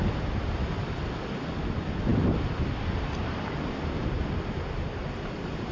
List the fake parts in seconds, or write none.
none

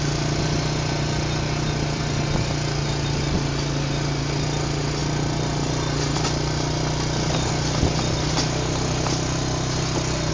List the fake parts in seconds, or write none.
none

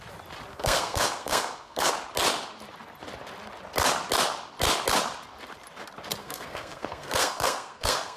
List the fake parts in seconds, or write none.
0.5-1.9 (codec, SNAC); 6.2-8.2

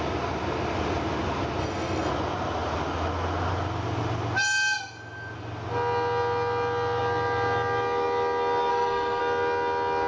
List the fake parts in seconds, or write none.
1.6-2.1 (codec, SNAC); 8.7-9.2

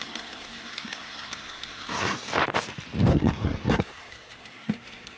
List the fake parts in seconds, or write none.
0.0-2.3 (codec, SNAC); 3.1-5.2

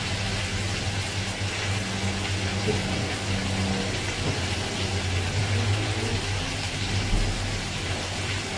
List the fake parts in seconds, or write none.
none

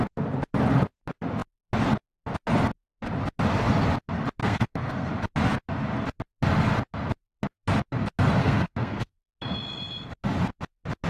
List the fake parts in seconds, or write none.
4.4-5.1 (codec, SNAC); 8.4-9.3

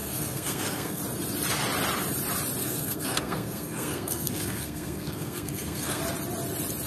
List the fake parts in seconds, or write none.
0.0-1.0 (codec, SNAC); 2.6-6.0